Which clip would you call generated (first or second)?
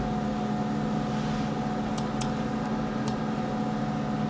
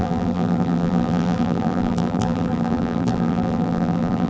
second